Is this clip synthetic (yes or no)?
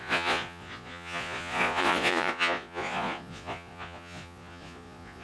yes